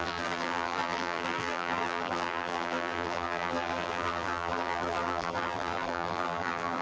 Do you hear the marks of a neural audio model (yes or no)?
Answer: yes